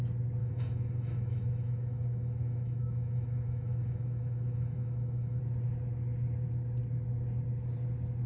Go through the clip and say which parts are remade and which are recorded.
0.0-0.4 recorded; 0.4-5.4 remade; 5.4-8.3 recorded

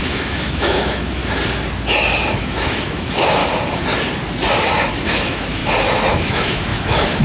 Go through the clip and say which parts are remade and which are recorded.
0.0-1.2 remade; 1.2-2.4 recorded; 2.4-3.4 remade; 3.4-4.8 recorded; 4.8-5.6 remade; 5.6-6.1 recorded; 6.1-7.2 remade

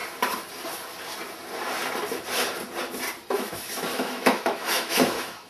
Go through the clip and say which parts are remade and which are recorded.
0.0-3.3 recorded; 3.3-5.5 remade